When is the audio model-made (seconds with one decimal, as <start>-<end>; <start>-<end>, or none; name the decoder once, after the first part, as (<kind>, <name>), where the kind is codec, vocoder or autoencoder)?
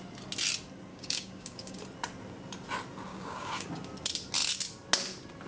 0.9-1.8 (codec, DAC); 3.1-3.7